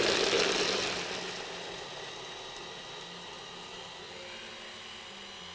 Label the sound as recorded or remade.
recorded